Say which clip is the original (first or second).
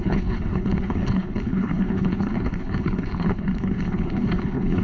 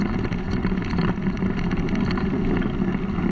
second